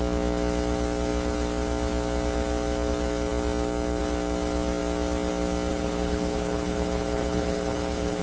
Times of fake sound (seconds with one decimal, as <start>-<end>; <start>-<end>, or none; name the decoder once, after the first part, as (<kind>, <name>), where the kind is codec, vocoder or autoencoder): 5.7-8.2 (codec, HILCodec)